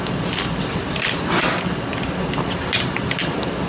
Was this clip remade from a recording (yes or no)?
no